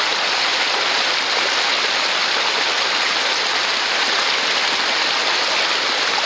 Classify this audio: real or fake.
real